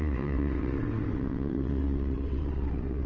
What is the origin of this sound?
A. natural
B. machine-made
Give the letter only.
B